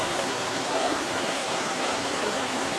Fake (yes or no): yes